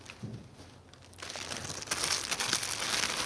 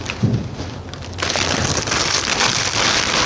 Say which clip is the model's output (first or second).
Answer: second